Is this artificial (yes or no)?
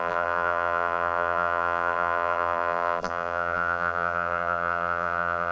yes